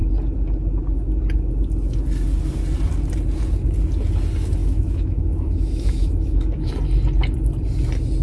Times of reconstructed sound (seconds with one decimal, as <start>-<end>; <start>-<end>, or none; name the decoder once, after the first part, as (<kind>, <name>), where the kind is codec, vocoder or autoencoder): 4.6-6.7 (autoencoder, DAC-VAE)